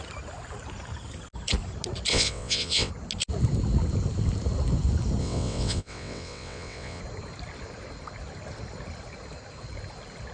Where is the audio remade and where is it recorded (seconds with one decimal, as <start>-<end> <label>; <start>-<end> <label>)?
0.0-2.1 recorded; 2.1-2.9 remade; 2.9-5.2 recorded; 5.2-7.0 remade; 7.0-10.3 recorded